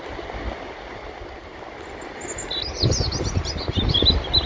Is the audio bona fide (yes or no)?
yes